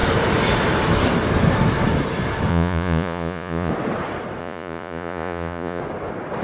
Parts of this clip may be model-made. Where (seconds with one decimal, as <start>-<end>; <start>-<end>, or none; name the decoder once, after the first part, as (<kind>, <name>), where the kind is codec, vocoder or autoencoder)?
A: 2.5-3.7 (vocoder, Vocos); 4.4-5.8